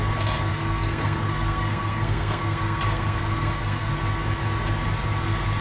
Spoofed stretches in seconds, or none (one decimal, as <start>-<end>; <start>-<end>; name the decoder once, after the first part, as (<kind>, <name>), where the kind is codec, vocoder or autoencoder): 0.5-3.9 (codec, SNAC)